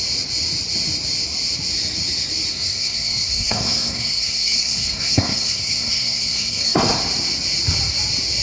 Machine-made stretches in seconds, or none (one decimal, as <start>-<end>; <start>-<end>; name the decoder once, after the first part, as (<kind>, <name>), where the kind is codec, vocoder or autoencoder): 2.5-7.0 (codec, SNAC)